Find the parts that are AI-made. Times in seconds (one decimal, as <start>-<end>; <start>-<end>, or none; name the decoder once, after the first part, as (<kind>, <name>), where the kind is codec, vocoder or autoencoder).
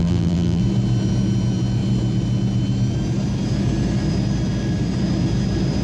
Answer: 0.0-0.6 (vocoder, BigVGAN v2)